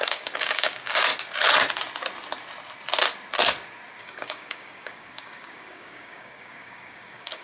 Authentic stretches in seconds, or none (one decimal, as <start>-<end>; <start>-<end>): 1.1-4.0